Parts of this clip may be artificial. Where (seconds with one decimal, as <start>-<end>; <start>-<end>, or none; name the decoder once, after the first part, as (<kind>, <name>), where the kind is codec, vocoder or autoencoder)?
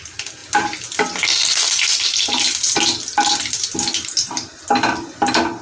none